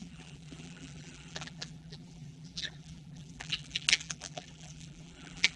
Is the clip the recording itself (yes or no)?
no